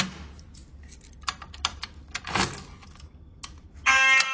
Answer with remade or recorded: recorded